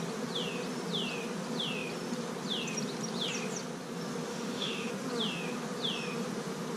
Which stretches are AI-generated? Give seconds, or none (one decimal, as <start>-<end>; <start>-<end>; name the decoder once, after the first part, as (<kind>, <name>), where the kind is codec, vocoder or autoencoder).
4.3-4.9 (autoencoder, DAC-VAE)